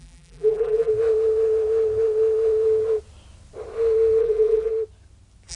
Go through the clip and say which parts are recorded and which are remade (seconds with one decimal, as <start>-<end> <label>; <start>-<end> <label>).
0.0-0.9 remade; 0.9-4.2 recorded; 4.2-4.7 remade; 4.7-5.5 recorded